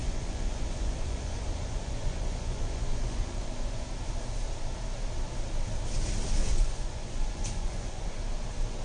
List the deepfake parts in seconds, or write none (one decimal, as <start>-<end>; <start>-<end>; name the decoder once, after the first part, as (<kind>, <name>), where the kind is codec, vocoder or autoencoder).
0.0-3.9 (vocoder, Vocos); 6.4-8.2